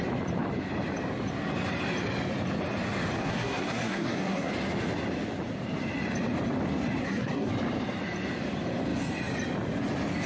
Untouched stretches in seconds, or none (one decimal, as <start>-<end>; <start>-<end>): 0.0-3.2; 4.5-7.0; 7.5-10.3